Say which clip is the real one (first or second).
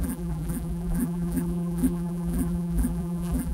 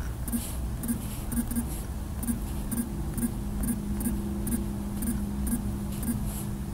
second